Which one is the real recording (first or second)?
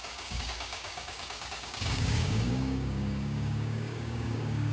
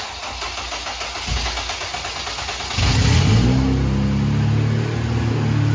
second